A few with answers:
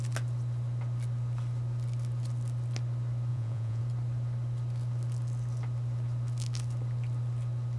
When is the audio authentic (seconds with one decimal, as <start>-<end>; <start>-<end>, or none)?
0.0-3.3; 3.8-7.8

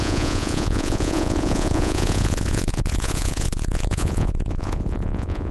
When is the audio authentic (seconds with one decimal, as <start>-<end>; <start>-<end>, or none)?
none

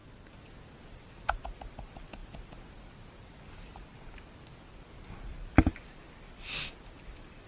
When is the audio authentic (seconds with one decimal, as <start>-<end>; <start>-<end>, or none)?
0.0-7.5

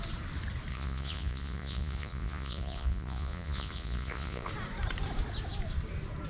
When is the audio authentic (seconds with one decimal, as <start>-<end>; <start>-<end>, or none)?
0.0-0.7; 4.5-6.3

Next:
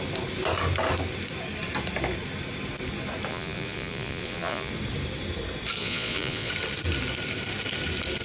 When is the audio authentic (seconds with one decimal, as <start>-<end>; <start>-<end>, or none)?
0.0-3.3; 4.7-5.8; 6.5-8.2

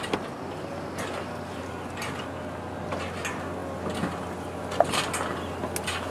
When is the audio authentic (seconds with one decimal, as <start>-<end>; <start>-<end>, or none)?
0.0-6.1